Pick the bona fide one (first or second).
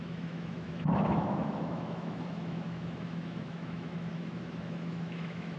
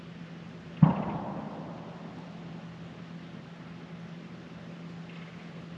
second